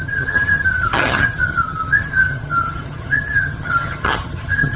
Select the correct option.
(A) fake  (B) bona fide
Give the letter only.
A